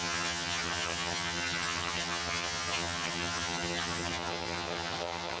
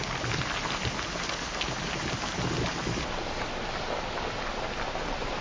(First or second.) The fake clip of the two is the first